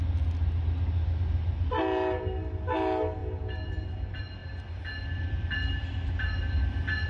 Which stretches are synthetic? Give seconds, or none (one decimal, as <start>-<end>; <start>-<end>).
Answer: 3.2-3.7